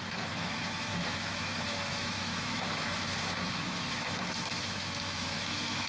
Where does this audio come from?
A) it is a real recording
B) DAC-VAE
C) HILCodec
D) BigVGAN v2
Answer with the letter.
B